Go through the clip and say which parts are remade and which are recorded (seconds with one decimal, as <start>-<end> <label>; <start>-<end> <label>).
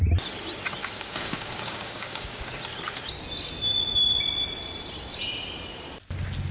0.0-0.8 recorded; 0.8-2.6 remade; 2.6-6.5 recorded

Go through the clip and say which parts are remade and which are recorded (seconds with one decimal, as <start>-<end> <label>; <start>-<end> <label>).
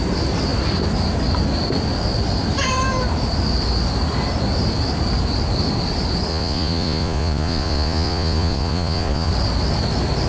0.0-6.3 recorded; 6.3-9.3 remade; 9.3-10.3 recorded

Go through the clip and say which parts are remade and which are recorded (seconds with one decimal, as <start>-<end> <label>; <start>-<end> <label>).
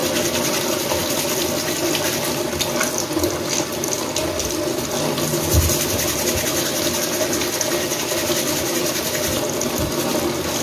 0.0-10.6 recorded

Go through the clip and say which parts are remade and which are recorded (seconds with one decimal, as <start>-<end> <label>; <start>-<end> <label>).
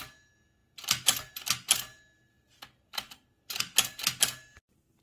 0.0-5.0 recorded